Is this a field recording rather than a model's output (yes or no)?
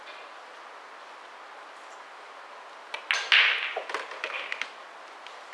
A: yes